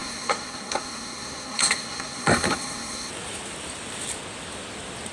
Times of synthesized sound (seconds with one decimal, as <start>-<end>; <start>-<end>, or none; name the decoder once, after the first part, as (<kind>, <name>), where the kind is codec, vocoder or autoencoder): 0.0-3.1 (codec, SNAC)